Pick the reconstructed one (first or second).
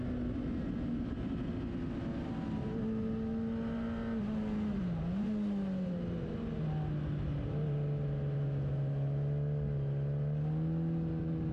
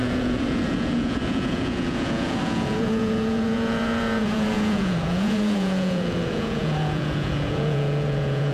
second